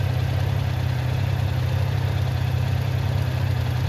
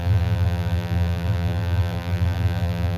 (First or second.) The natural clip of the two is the first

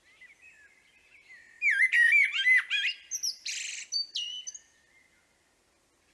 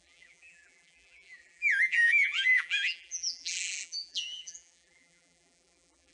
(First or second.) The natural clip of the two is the first